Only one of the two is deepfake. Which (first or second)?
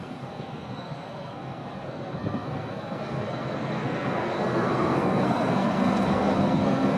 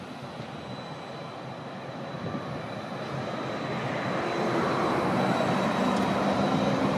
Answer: first